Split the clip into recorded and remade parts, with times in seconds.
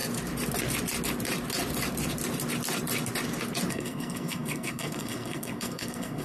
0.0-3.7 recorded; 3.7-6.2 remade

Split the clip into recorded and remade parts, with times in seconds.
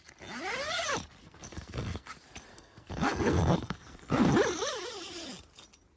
0.0-1.2 recorded; 1.2-2.1 remade; 2.1-2.5 recorded; 2.5-4.3 remade; 4.3-6.0 recorded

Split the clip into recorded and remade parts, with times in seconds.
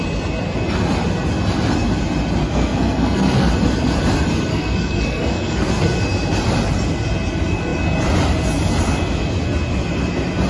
0.0-2.4 recorded; 2.4-3.5 remade; 3.5-4.5 recorded; 4.5-5.7 remade; 5.7-10.5 recorded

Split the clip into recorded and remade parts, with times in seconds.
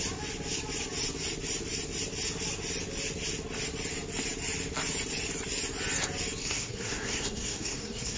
0.0-6.4 recorded; 6.4-8.2 remade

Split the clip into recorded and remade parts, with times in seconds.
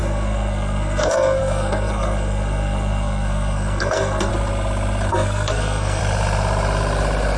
0.0-4.3 remade; 4.3-5.1 recorded; 5.1-6.0 remade; 6.0-7.4 recorded